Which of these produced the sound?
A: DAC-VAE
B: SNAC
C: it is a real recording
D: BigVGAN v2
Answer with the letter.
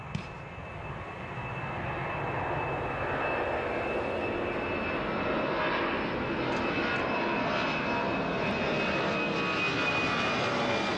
C